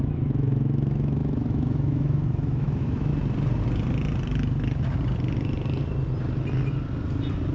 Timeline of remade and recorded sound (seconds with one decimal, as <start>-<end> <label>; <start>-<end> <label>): 0.0-3.1 remade; 3.1-7.5 recorded